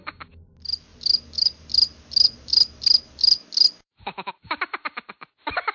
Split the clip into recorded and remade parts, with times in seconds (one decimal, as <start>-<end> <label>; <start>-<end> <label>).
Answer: 0.0-5.7 recorded